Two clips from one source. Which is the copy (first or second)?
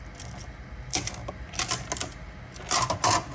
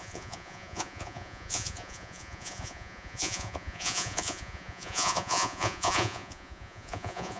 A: second